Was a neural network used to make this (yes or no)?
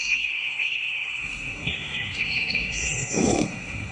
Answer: yes